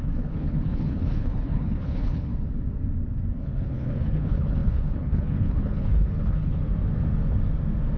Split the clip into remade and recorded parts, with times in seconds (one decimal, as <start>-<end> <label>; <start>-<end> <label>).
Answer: 0.0-2.3 remade; 2.3-3.4 recorded; 3.4-6.6 remade; 6.6-8.0 recorded